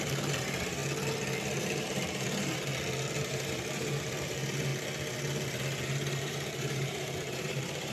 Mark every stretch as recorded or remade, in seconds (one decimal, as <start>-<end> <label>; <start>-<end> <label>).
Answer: 0.0-0.8 remade; 0.8-1.6 recorded; 1.6-2.7 remade; 2.7-3.2 recorded; 3.2-4.7 remade; 4.7-6.2 recorded; 6.2-7.9 remade